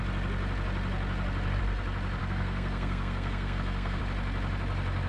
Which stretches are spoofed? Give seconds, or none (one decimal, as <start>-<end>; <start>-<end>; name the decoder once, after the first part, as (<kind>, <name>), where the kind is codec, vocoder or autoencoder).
2.2-4.0 (codec, SNAC)